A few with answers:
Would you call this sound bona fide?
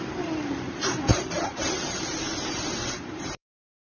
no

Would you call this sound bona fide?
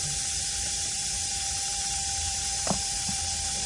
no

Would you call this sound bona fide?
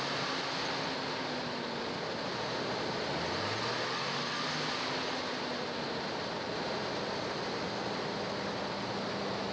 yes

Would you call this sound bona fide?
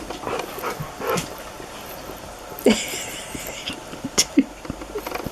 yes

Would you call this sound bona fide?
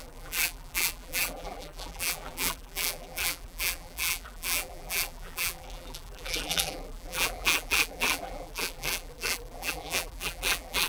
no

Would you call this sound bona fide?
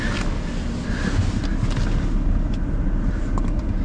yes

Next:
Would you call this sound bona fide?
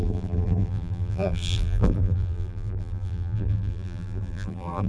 no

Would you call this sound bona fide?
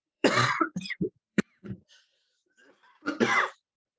no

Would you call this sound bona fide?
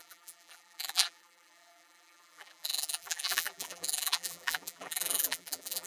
no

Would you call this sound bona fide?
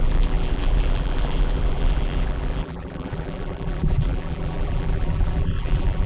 no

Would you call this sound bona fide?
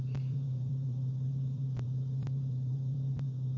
no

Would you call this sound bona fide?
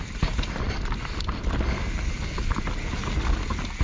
yes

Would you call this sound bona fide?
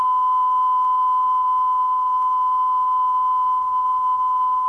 yes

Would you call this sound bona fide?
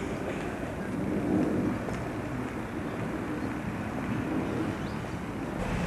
yes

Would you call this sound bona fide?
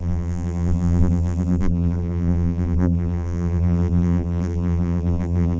no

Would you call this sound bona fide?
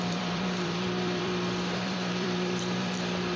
no